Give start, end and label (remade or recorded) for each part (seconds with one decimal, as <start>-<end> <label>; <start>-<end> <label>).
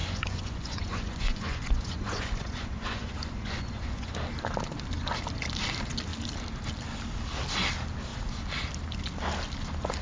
0.0-4.1 remade; 4.1-10.0 recorded